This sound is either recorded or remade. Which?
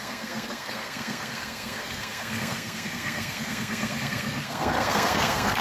remade